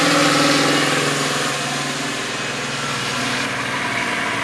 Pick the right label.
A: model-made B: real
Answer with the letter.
B